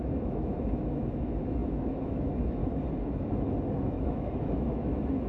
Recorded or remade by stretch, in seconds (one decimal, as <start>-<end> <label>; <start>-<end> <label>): 0.0-2.6 remade; 2.6-3.9 recorded; 3.9-5.3 remade